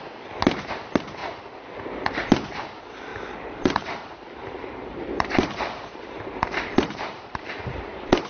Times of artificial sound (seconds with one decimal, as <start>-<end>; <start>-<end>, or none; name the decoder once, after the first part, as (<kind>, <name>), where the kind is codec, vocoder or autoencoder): 3.1-7.8 (vocoder, BigVGAN v2)